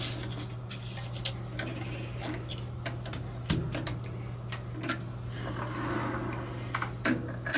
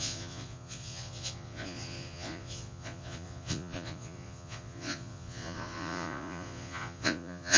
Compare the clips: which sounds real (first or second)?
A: first